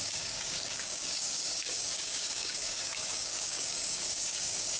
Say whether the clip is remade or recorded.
remade